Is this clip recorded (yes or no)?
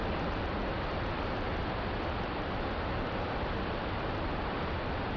yes